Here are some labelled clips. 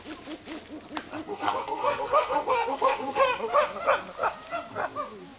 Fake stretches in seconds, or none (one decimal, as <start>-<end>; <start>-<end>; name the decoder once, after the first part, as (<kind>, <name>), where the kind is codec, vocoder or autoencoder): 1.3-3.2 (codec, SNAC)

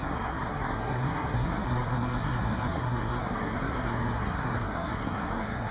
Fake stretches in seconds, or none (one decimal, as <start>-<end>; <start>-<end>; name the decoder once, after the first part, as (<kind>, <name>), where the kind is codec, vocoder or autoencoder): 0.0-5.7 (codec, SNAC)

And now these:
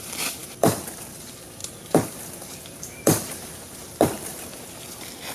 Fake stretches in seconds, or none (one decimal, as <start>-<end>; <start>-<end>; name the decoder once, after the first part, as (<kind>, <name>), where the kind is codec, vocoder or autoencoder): 0.4-1.2 (vocoder, BigVGAN v2); 1.6-4.6

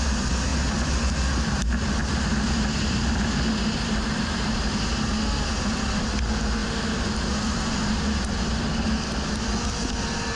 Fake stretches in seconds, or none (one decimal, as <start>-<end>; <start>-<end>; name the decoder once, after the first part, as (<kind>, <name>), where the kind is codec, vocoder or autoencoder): none